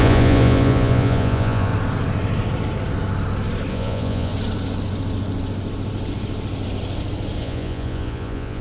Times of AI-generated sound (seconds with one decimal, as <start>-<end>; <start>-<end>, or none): 0.0-1.7; 3.7-4.3; 7.4-8.6